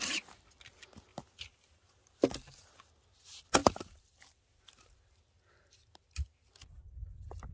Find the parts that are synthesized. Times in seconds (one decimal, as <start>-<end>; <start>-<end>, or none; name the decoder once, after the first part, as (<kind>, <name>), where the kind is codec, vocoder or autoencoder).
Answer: none